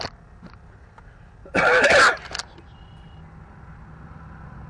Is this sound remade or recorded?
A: recorded